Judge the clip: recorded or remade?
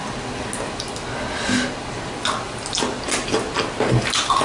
recorded